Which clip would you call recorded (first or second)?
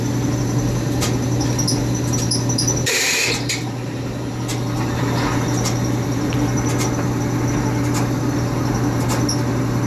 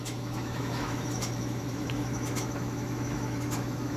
first